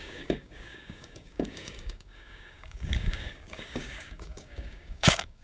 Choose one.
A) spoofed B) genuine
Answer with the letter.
A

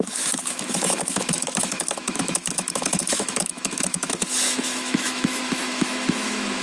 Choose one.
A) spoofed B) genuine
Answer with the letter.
A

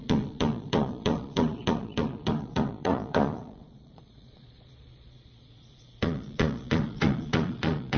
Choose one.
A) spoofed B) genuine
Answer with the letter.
A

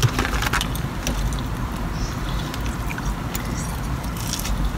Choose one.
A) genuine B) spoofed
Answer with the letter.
A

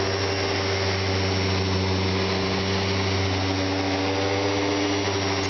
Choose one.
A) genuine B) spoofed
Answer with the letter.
A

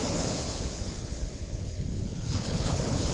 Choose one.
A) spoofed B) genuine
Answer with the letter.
A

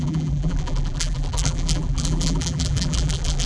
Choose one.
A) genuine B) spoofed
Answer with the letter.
B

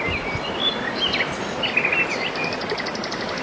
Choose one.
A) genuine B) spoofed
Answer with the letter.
A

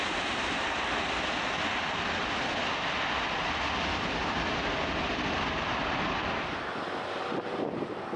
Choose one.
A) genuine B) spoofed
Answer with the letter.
A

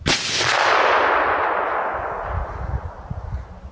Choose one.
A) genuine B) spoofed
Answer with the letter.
A